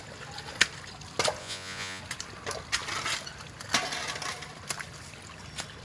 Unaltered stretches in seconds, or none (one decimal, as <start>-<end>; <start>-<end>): 0.0-1.4; 2.0-5.8